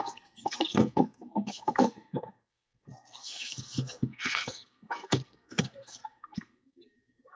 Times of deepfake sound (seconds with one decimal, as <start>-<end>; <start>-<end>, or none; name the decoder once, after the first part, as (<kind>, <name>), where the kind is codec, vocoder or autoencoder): 0.0-7.4 (codec, SNAC)